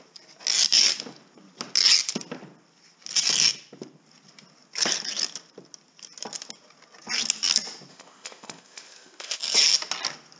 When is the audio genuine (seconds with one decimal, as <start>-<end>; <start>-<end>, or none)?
0.0-7.9; 9.4-10.4